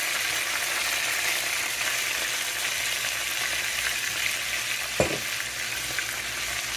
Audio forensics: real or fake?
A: real